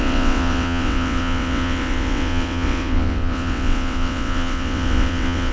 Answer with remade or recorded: remade